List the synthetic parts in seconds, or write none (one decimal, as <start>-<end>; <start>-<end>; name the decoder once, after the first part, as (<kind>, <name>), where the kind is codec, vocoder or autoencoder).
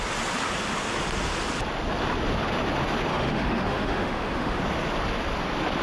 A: 3.1-4.6 (autoencoder, DAC-VAE)